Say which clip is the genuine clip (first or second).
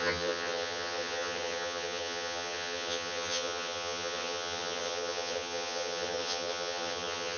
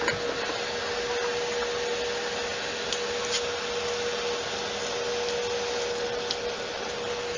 second